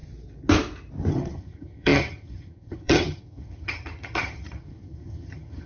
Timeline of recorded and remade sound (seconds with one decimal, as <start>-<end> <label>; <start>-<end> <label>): 0.0-1.1 recorded; 1.1-5.7 remade